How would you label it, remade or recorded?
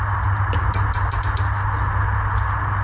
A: recorded